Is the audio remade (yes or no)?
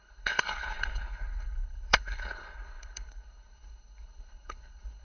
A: yes